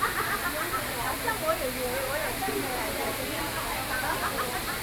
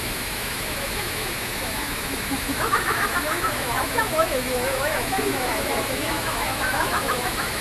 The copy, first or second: second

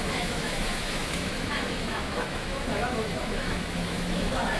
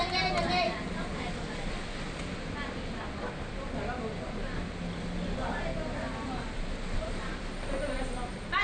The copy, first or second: first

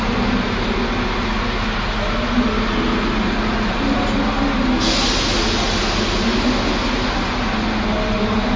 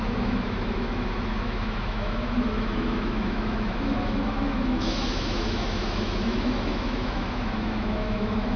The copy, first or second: second